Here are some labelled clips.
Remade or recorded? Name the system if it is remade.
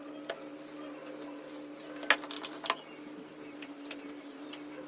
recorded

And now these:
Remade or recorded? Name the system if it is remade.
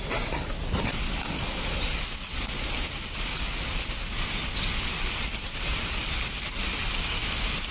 recorded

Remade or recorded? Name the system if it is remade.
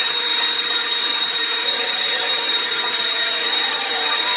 remade, vocoder, HiFi-GAN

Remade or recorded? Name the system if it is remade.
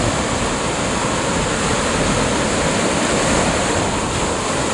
recorded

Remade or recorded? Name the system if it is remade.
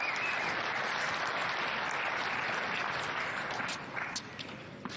recorded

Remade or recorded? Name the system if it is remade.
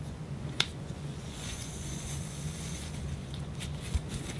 remade, vocoder, Vocos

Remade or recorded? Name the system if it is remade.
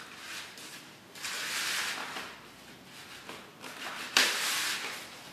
recorded